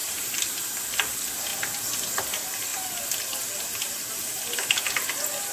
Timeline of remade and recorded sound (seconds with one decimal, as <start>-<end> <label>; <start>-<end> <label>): 0.0-0.6 remade; 0.6-5.5 recorded